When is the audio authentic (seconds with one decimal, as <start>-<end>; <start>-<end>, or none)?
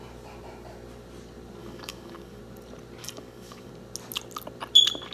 0.0-1.6; 2.4-3.0; 3.7-5.1